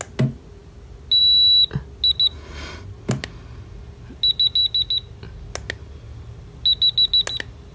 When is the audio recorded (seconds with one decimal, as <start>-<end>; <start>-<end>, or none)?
0.0-7.7